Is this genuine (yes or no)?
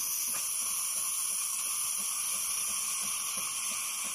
yes